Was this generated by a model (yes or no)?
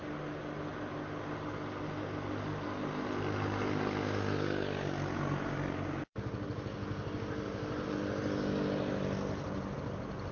no